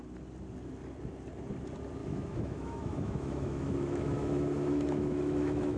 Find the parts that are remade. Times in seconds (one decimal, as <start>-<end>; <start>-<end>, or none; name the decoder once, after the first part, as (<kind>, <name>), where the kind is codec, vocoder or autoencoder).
2.0-5.8 (autoencoder, DAC-VAE)